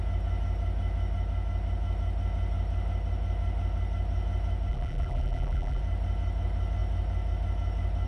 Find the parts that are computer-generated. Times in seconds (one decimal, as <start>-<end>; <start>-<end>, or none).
4.7-5.8